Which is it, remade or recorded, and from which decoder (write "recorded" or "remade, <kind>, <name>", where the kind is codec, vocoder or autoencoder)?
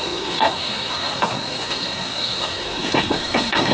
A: remade, codec, SNAC